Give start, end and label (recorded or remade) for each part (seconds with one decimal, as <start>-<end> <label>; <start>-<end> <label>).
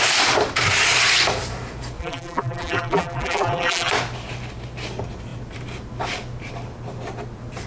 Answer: 0.0-2.0 recorded; 2.0-3.9 remade; 3.9-7.7 recorded